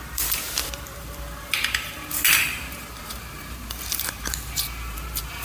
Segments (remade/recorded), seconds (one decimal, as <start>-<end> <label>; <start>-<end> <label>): 0.0-5.4 remade